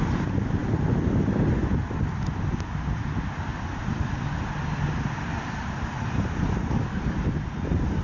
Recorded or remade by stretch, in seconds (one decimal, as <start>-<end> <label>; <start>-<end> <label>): 0.0-0.6 recorded; 0.6-1.1 remade; 1.1-3.5 recorded; 3.5-8.0 remade